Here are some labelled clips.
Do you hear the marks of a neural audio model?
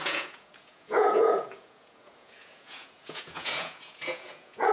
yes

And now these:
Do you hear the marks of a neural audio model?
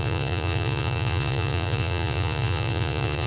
yes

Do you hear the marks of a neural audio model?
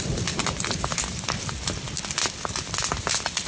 no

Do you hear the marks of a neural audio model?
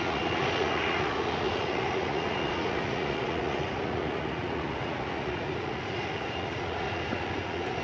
yes